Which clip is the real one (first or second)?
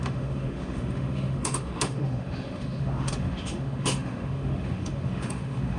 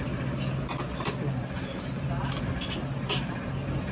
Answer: second